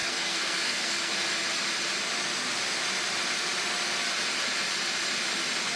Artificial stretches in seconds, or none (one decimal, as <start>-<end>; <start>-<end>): 0.0-1.1